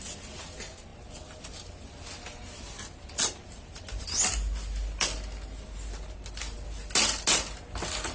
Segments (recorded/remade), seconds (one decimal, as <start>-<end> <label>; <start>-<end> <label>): 0.0-8.1 recorded